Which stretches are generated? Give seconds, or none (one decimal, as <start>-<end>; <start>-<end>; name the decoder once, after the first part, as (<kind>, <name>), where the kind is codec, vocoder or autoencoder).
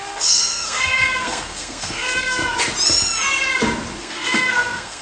0.0-2.4 (codec, SNAC); 4.0-5.0